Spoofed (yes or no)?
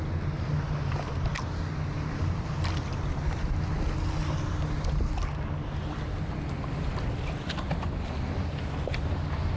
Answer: no